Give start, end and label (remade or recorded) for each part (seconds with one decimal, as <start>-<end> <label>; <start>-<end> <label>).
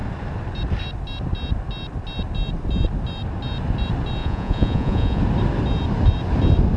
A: 0.0-4.2 recorded; 4.2-5.2 remade; 5.2-6.8 recorded